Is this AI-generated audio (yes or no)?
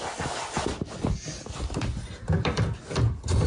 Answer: no